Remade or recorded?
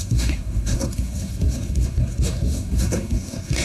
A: remade